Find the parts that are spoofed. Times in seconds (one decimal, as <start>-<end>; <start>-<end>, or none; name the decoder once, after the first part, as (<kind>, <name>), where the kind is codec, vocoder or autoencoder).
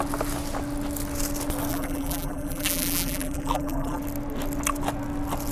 1.7-4.0 (vocoder, BigVGAN v2)